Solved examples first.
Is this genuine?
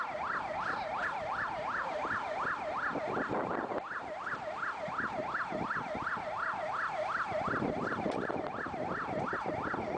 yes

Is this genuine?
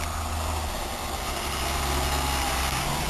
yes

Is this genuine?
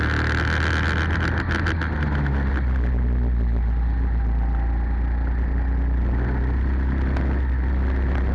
yes